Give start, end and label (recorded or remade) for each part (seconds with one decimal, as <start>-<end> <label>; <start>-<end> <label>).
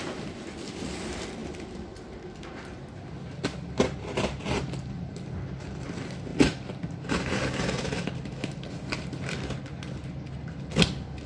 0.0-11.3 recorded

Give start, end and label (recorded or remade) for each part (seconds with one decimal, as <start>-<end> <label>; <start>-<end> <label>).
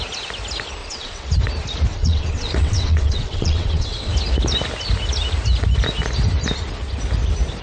0.0-0.8 recorded; 0.8-1.3 remade; 1.3-1.9 recorded; 1.9-4.1 remade; 4.1-7.6 recorded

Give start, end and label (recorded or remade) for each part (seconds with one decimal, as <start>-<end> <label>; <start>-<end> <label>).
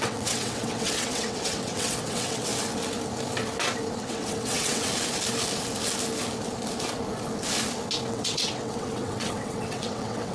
0.0-2.5 remade; 2.5-4.0 recorded; 4.0-4.9 remade; 4.9-8.1 recorded; 8.1-10.3 remade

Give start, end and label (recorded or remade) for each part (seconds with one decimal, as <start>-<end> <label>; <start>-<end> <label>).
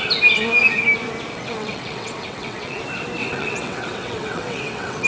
0.0-1.3 recorded; 1.3-2.8 remade; 2.8-3.2 recorded; 3.2-5.1 remade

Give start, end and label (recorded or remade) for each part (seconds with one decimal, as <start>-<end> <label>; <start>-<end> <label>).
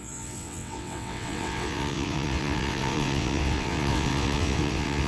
0.0-5.1 remade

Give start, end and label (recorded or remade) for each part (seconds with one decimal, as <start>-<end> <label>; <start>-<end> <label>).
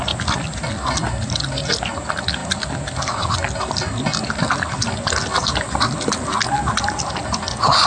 0.0-7.9 recorded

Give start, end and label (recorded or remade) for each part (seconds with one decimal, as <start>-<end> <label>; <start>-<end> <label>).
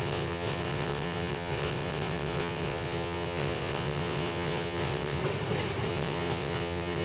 0.0-5.2 remade; 5.2-5.9 recorded; 5.9-7.0 remade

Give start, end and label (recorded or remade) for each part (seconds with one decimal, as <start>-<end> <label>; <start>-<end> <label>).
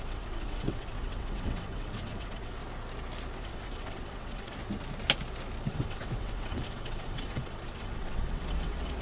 0.0-2.6 remade; 2.6-3.4 recorded; 3.4-4.6 remade; 4.6-5.7 recorded; 5.7-9.0 remade